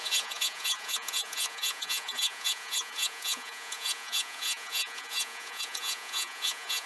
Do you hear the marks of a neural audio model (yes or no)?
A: yes